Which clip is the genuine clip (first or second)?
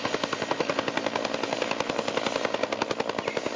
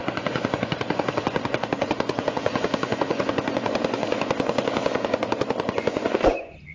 first